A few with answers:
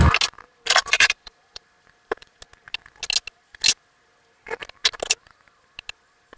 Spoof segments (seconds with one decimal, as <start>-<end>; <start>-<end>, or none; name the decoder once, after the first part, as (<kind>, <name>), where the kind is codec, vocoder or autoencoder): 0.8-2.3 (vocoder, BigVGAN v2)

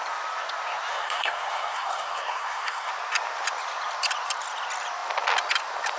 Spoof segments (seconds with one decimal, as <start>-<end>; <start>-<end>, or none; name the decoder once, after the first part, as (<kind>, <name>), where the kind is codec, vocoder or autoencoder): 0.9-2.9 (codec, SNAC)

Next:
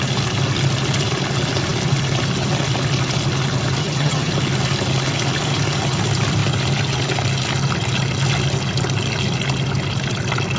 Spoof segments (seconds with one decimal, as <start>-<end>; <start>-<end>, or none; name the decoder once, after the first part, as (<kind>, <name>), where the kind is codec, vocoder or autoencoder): 3.8-4.3 (vocoder, HiFi-GAN)

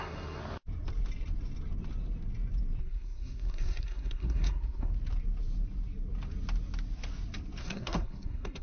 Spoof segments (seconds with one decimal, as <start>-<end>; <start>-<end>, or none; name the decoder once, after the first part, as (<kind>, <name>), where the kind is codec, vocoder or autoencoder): 0.0-0.4 (codec, SNAC); 2.8-4.9; 7.6-8.6

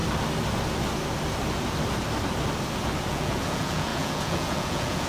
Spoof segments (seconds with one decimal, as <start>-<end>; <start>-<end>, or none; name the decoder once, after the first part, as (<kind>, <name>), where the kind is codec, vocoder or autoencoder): 3.1-5.1 (vocoder, Vocos)

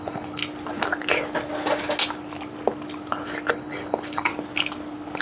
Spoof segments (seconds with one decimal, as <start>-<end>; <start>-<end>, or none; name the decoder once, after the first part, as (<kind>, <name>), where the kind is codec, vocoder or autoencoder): 0.0-0.4 (codec, HILCodec); 3.5-4.3

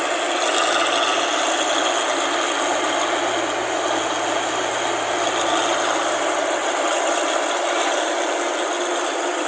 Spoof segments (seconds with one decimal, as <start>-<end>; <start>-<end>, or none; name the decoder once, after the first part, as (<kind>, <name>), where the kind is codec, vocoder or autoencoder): none

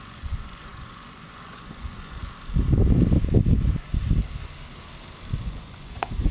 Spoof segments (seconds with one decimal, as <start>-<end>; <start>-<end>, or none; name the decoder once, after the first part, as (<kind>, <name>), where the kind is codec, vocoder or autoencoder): 0.0-2.2 (vocoder, Vocos); 5.4-6.3